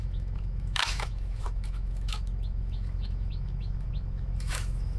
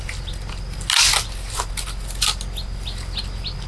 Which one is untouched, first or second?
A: second